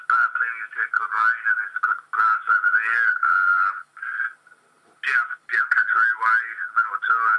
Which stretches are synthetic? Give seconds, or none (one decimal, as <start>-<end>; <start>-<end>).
3.1-3.9; 5.4-5.9

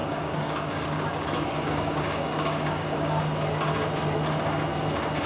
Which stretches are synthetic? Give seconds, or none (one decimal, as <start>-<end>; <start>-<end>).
0.0-3.2

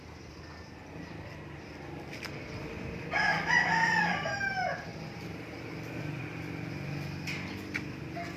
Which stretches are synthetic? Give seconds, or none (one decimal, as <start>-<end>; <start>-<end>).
3.3-4.1; 4.9-6.2